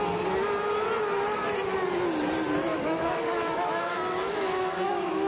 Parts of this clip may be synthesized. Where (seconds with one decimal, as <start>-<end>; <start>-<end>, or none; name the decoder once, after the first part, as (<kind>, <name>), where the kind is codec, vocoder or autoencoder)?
2.7-5.3 (autoencoder, DAC-VAE)